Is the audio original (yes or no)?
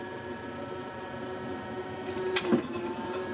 no